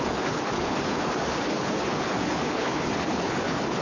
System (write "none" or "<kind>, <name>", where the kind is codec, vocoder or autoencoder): codec, HILCodec